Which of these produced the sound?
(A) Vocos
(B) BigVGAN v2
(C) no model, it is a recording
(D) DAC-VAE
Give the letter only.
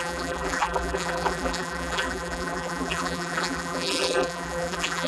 B